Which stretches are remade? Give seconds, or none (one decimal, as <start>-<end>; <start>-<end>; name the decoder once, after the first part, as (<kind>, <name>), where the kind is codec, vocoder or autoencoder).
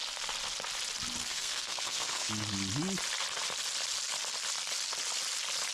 1.2-2.3 (codec, SNAC)